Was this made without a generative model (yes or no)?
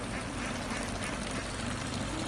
yes